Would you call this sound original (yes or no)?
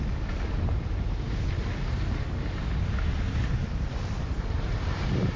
yes